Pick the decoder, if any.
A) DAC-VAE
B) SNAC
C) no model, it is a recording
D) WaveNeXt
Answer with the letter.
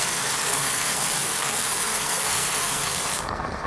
B